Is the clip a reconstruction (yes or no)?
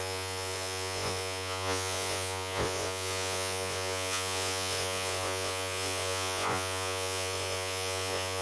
yes